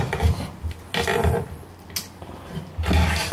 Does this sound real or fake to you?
real